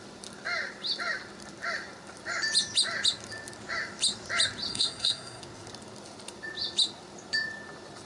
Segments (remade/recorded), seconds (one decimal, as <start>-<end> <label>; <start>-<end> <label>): 0.0-4.7 recorded; 4.7-5.4 remade; 5.4-8.1 recorded